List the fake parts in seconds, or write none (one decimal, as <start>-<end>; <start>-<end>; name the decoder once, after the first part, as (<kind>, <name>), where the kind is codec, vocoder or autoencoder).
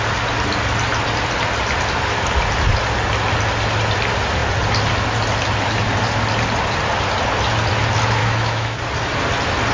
8.2-8.8 (autoencoder, DAC-VAE)